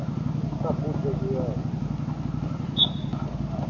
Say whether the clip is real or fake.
real